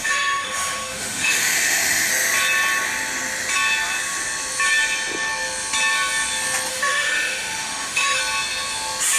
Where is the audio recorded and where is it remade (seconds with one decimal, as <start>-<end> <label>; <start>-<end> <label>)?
0.0-2.1 remade; 2.1-6.7 recorded; 6.7-8.2 remade; 8.2-9.2 recorded